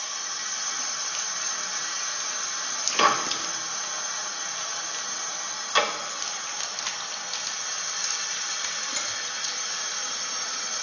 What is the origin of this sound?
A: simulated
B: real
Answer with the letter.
B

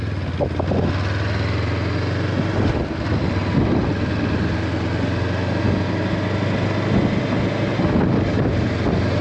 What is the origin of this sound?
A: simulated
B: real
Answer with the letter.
B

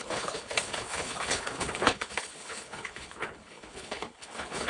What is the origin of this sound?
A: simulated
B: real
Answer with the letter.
A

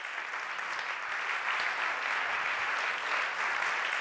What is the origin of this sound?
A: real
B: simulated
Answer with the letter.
A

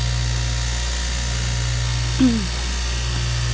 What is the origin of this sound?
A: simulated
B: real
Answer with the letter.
B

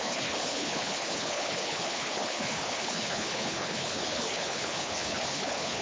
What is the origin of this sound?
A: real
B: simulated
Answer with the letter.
B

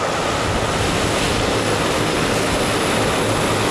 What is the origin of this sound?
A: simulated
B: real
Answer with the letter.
B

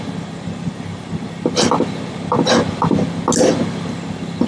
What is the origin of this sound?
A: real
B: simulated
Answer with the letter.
A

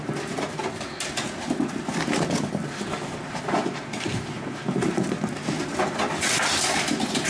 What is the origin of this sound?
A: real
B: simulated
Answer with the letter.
A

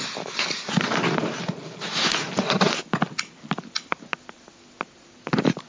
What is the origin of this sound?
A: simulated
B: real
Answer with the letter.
B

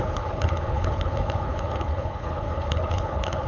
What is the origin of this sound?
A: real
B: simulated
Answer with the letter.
B